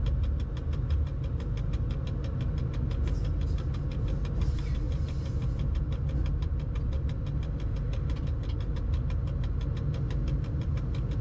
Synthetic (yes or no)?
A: no